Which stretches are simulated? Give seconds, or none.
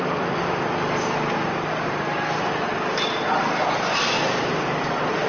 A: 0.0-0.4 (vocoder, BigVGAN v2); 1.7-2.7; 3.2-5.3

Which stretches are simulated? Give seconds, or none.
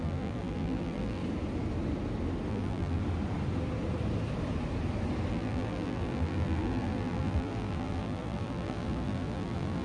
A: 0.0-1.2 (vocoder, BigVGAN v2); 2.5-3.0; 5.3-9.8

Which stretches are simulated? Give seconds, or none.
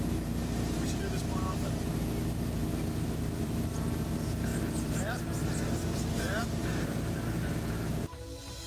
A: 0.0-8.7 (vocoder, BigVGAN v2)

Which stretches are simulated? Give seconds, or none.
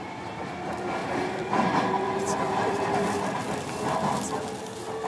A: 1.0-3.4 (vocoder, BigVGAN v2)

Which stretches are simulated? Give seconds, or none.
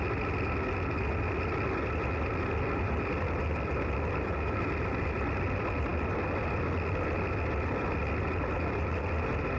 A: none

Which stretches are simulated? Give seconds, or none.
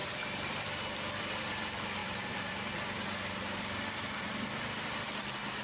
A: 0.0-1.2 (vocoder, BigVGAN v2); 2.0-4.2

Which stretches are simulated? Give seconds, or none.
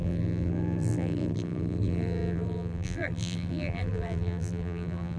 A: 0.0-5.2 (vocoder, BigVGAN v2)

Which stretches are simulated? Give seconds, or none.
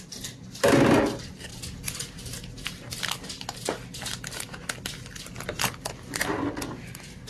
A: none